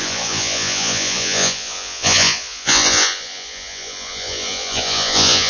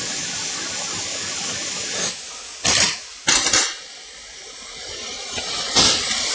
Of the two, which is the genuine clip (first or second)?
second